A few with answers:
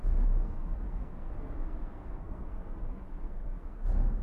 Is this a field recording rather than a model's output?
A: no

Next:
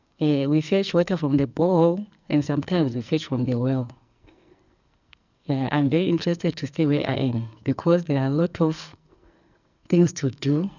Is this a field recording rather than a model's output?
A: no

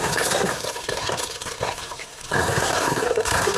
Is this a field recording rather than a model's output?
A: no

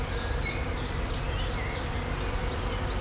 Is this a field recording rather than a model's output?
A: yes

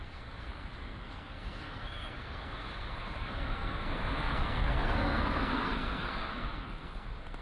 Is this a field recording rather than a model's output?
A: no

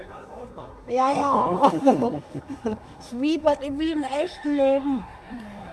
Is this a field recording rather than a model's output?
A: no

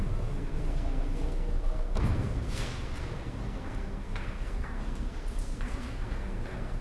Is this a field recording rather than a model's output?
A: no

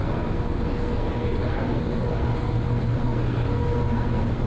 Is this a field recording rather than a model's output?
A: no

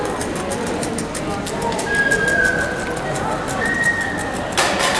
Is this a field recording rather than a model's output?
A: yes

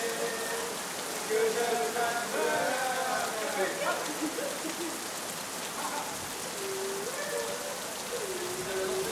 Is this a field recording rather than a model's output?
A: yes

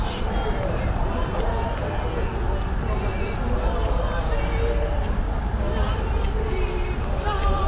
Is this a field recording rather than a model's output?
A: yes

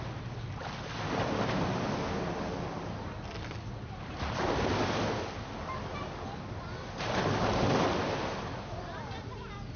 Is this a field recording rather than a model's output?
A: yes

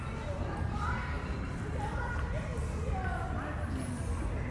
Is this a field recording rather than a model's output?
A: yes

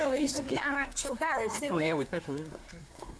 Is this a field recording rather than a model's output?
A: no